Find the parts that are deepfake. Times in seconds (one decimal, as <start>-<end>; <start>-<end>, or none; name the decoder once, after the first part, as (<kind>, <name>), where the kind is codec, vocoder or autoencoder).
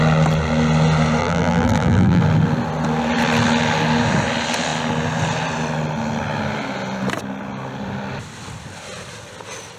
1.2-2.2 (vocoder, BigVGAN v2)